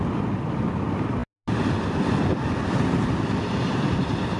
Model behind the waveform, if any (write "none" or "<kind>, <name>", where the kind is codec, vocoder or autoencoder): none